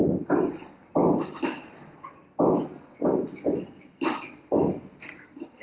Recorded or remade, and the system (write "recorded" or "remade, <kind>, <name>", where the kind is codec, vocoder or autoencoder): recorded